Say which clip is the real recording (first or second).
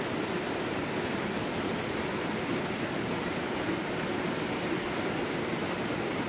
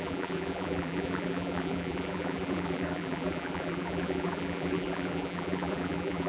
first